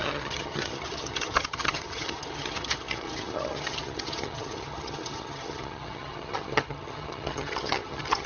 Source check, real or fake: fake